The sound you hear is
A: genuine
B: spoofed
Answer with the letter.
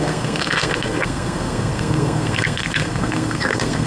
B